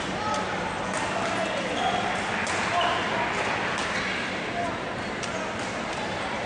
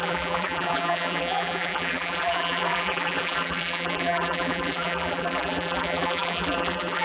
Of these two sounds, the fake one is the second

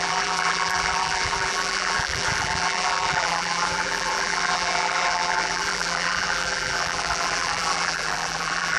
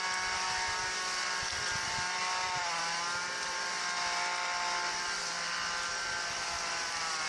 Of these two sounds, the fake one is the first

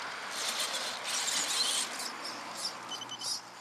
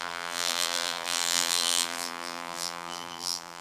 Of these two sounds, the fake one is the second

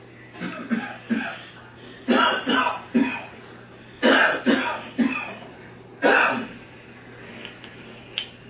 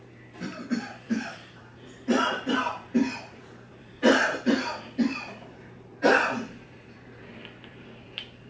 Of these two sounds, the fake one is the second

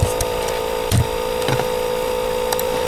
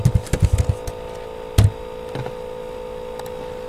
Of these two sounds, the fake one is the first